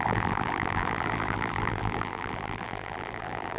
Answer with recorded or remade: remade